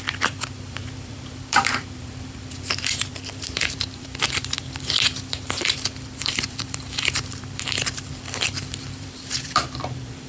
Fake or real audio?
fake